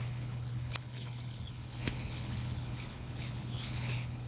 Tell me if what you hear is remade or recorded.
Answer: remade